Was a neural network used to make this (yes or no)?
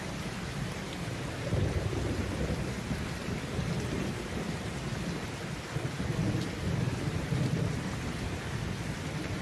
no